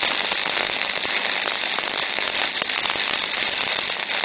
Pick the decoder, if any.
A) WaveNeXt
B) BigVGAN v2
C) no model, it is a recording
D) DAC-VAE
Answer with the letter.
C